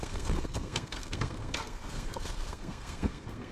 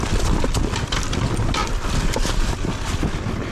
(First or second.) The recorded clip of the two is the second